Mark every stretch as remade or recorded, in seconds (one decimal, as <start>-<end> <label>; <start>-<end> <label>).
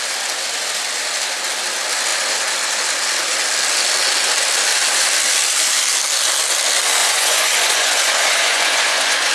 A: 0.0-7.0 recorded; 7.0-9.3 remade